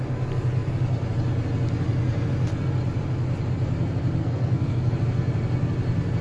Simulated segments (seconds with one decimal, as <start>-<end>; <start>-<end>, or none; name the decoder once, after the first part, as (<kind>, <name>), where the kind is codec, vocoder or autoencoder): 4.2-4.9 (codec, SNAC)